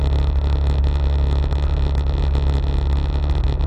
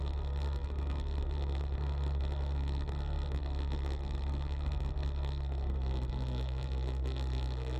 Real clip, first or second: first